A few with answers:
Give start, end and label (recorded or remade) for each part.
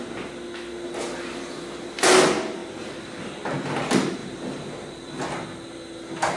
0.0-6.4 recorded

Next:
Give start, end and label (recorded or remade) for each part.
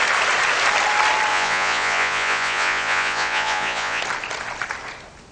0.0-1.3 recorded; 1.3-4.0 remade; 4.0-5.3 recorded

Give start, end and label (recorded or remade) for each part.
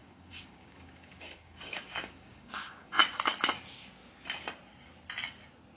0.0-3.0 remade; 3.0-5.8 recorded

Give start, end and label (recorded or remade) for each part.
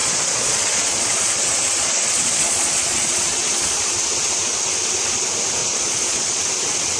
0.0-4.0 remade; 4.0-5.6 recorded; 5.6-6.4 remade; 6.4-7.0 recorded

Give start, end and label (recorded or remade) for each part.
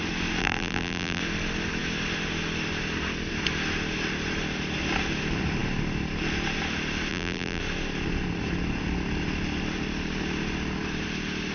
0.0-0.4 recorded; 0.4-1.2 remade; 1.2-7.1 recorded; 7.1-7.6 remade; 7.6-11.5 recorded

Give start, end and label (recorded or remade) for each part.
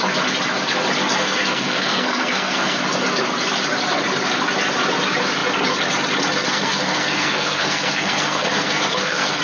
0.0-1.2 recorded; 1.2-2.8 remade; 2.8-6.4 recorded; 6.4-9.4 remade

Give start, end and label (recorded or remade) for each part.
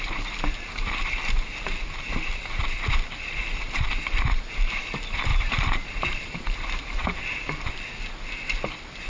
0.0-5.3 recorded; 5.3-7.7 remade; 7.7-9.1 recorded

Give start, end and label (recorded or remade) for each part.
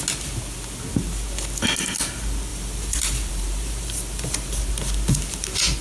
0.0-2.5 recorded; 2.5-4.5 remade; 4.5-5.8 recorded